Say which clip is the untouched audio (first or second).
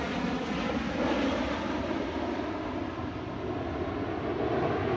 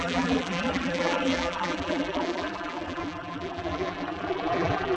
first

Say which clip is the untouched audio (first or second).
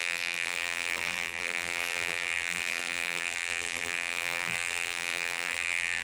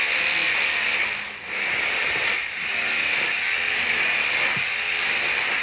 second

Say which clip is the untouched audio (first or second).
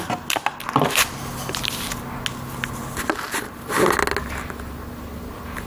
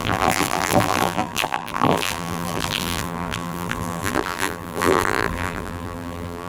first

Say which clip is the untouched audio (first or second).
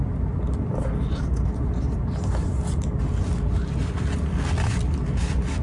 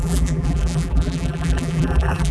first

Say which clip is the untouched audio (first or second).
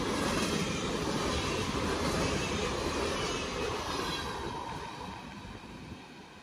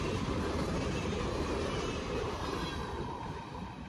first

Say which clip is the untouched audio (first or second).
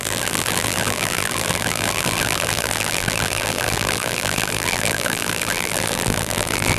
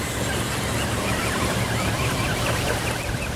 second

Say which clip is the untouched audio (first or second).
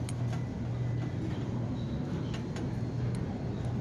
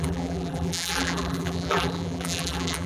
first